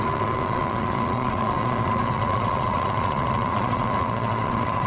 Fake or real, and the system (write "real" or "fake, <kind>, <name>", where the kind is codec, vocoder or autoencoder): fake, vocoder, Vocos